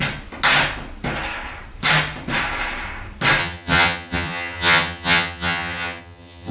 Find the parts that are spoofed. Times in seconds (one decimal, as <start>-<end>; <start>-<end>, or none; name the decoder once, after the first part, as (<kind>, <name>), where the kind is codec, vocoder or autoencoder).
3.4-6.5 (vocoder, HiFi-GAN)